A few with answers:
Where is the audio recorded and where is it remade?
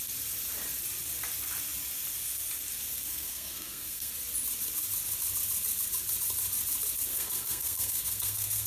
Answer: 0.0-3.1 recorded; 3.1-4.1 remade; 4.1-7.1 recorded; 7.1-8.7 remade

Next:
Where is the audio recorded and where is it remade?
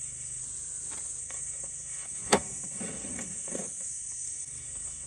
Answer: 0.0-0.4 remade; 0.4-1.2 recorded; 1.2-5.1 remade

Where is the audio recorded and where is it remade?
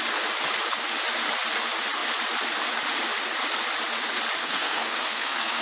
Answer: 0.0-4.4 recorded; 4.4-5.6 remade